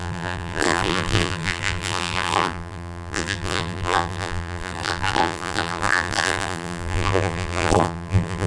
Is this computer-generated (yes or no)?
yes